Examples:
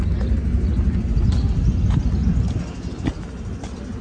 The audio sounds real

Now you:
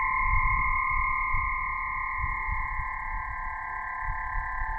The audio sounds real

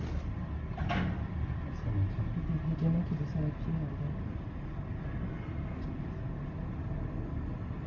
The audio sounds real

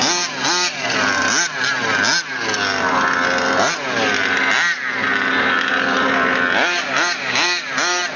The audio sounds real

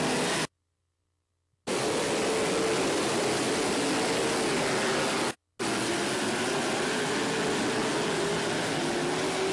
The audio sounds real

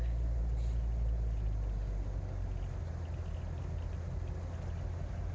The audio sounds real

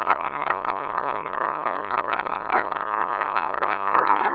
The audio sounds fake